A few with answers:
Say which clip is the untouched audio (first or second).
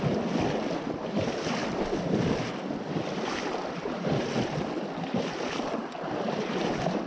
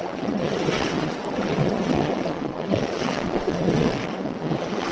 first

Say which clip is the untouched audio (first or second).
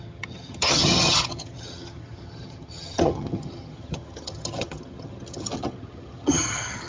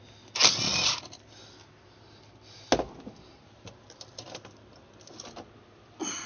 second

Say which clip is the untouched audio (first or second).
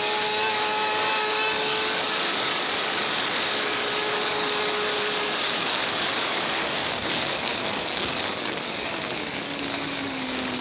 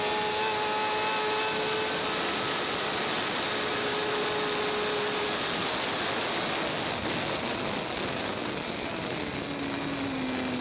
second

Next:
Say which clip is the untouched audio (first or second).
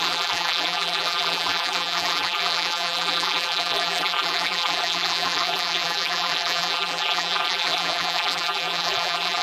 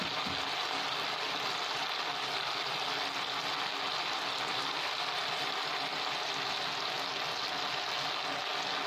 second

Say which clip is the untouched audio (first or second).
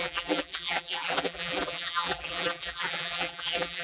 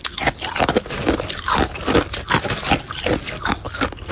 second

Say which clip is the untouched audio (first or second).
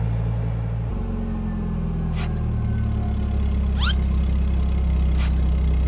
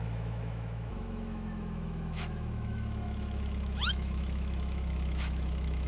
first